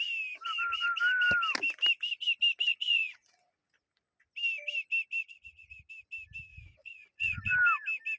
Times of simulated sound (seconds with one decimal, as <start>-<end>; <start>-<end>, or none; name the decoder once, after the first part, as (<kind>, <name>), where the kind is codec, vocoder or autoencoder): 2.7-3.7 (vocoder, Vocos); 5.2-5.9; 6.5-7.5